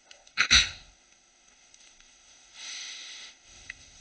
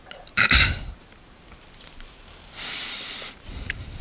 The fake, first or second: first